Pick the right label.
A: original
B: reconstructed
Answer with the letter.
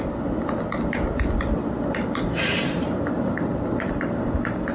A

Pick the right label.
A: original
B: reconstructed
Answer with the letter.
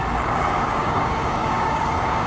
B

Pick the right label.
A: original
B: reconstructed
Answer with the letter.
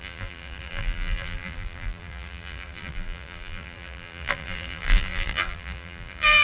B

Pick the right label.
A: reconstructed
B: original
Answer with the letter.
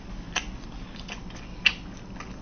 B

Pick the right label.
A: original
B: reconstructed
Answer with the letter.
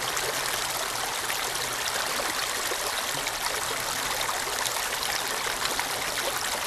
A